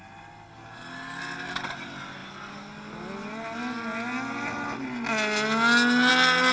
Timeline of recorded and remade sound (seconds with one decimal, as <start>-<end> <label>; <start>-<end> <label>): 0.0-6.5 recorded

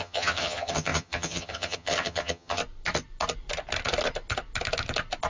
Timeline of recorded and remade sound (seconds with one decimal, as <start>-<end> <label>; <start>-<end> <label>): 0.0-2.6 remade; 2.6-5.3 recorded

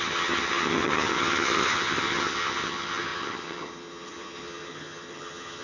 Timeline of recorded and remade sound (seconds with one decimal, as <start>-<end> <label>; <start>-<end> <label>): 0.0-5.6 remade